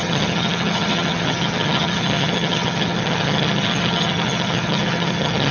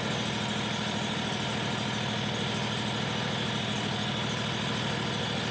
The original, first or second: second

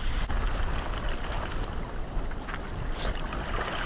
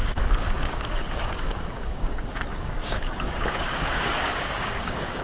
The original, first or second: first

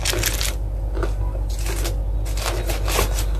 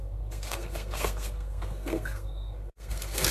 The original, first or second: first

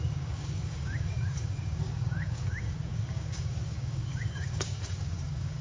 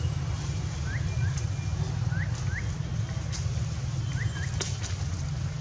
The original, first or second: second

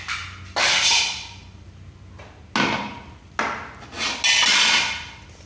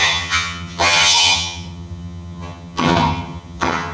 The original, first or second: first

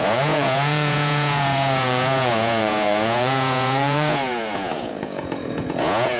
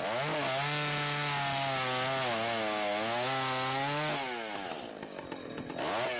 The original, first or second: second